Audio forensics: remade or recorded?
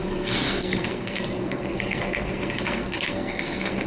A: remade